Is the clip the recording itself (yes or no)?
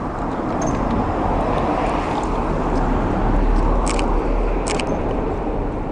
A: yes